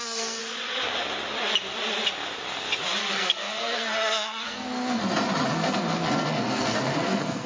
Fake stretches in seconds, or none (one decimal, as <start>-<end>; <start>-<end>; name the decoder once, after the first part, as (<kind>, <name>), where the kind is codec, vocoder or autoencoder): 0.0-0.4 (codec, SNAC); 3.1-5.0; 5.5-7.5